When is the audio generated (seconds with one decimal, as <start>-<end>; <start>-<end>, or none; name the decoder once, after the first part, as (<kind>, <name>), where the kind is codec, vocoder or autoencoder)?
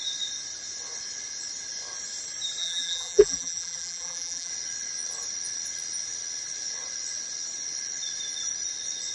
2.6-4.5 (vocoder, BigVGAN v2)